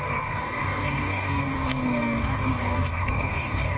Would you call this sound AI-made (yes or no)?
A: yes